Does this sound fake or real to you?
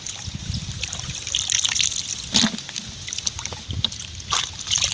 real